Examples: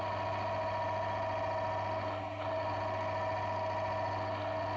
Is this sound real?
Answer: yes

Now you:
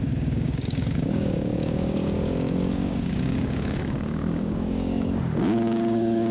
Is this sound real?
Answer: no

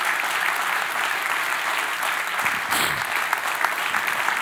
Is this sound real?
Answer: yes